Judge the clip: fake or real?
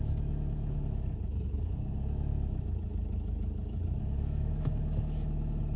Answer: fake